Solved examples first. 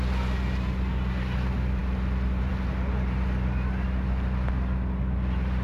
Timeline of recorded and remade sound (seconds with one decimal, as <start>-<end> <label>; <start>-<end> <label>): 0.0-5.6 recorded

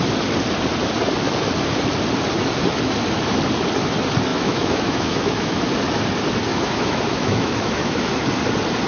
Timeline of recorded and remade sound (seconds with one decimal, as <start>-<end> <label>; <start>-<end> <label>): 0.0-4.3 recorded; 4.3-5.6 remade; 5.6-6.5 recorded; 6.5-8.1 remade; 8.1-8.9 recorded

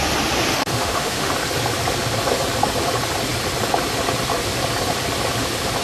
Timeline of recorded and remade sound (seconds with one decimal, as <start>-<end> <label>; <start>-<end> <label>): 0.0-0.5 recorded; 0.5-1.3 remade; 1.3-5.8 recorded

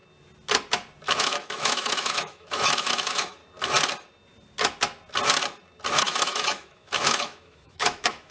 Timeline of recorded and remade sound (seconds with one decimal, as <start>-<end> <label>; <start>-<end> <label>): 0.0-1.2 recorded; 1.2-3.4 remade; 3.4-6.0 recorded; 6.0-8.3 remade

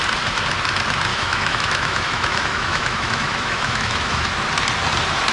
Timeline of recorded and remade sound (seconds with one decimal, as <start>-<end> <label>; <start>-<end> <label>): 0.0-1.1 recorded; 1.1-4.3 remade; 4.3-5.3 recorded

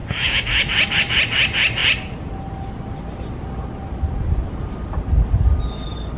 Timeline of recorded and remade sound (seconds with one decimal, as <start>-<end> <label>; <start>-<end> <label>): 0.0-6.2 recorded

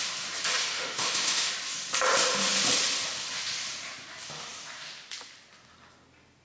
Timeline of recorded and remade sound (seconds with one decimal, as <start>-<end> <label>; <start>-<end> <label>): 0.0-0.7 recorded; 0.7-1.5 remade; 1.5-6.4 recorded

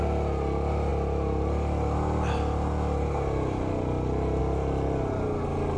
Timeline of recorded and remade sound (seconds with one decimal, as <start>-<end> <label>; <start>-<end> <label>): 0.0-5.8 recorded